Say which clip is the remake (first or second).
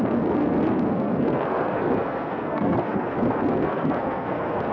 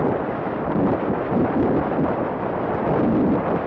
first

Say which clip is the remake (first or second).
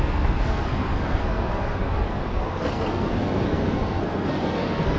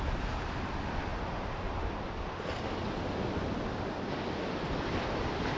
first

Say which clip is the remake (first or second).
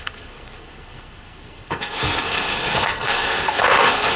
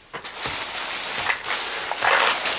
first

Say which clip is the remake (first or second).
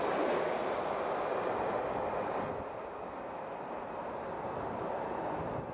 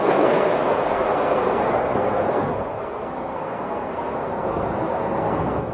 second